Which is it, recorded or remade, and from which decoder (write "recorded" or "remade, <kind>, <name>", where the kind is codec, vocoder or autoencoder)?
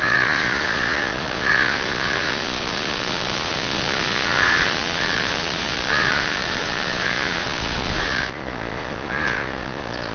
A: remade, vocoder, Vocos